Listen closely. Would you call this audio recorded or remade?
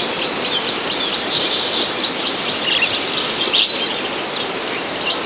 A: recorded